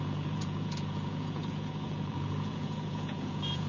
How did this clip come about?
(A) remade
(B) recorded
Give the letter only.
A